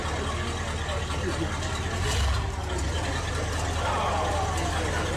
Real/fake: real